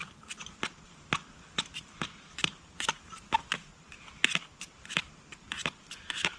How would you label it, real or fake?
real